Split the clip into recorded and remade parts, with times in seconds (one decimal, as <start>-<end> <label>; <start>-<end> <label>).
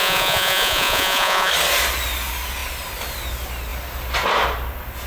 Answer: 0.0-1.5 remade; 1.5-5.1 recorded